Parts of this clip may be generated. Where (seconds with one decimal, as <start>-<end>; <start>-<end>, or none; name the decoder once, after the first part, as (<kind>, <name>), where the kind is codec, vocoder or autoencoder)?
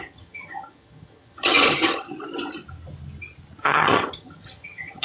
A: 0.0-2.1 (vocoder, HiFi-GAN); 3.6-5.0